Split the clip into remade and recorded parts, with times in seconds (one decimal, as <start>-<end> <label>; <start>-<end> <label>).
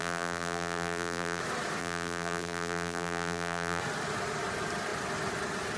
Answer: 0.0-1.4 remade; 1.4-1.8 recorded; 1.8-3.8 remade; 3.8-5.8 recorded